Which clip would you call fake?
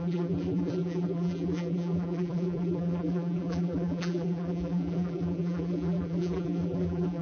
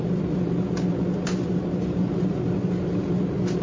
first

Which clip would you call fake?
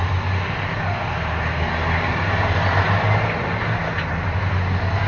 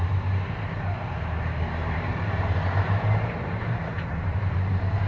second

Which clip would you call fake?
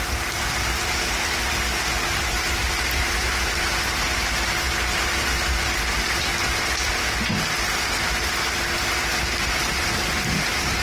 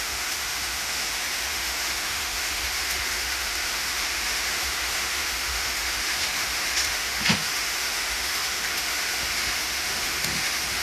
second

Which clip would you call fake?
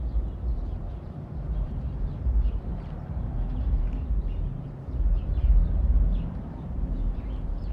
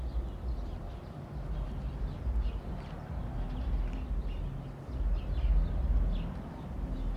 first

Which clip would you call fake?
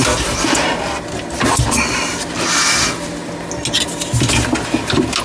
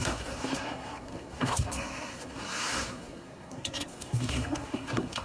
second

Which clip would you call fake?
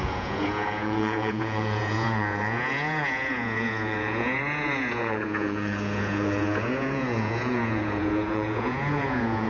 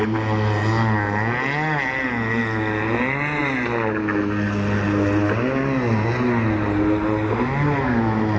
first